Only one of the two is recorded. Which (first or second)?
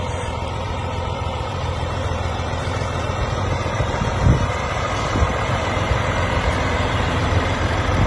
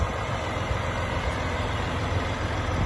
second